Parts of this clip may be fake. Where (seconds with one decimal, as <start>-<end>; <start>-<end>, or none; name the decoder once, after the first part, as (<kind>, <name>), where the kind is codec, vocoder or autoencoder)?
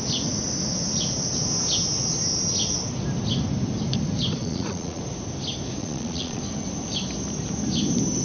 4.4-5.0 (vocoder, Vocos); 5.8-6.4